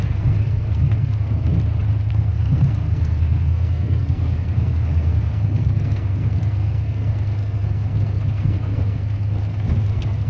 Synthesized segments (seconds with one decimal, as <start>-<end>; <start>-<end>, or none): 0.0-1.5; 2.1-10.3